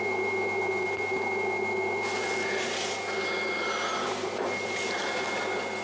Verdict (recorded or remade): recorded